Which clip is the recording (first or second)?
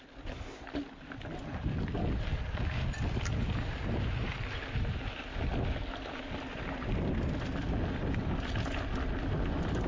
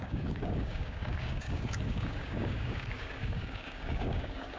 first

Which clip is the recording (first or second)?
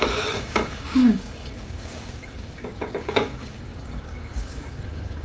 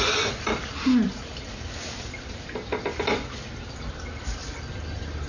second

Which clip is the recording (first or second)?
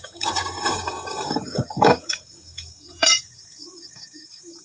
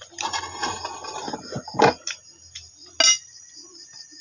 second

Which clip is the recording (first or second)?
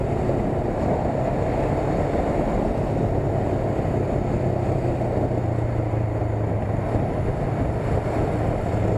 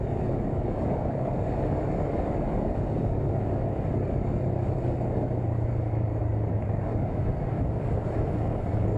first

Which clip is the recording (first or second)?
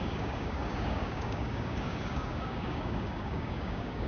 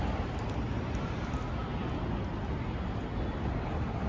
second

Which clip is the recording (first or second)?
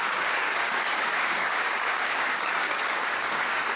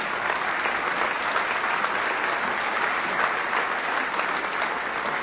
second